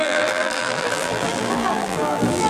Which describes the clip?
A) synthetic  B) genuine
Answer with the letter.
A